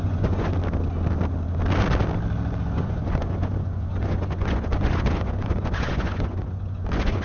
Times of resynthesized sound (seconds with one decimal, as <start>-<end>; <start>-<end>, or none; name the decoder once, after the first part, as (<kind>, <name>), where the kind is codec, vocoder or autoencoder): 0.0-0.5 (vocoder, Vocos); 2.6-7.2